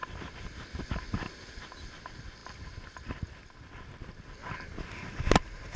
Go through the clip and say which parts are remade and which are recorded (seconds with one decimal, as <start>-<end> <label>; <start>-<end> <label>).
0.0-5.8 recorded